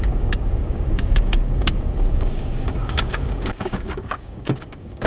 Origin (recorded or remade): remade